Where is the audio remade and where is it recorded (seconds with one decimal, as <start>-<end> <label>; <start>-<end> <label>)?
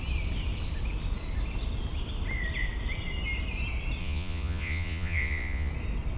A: 0.0-4.0 recorded; 4.0-5.7 remade; 5.7-6.2 recorded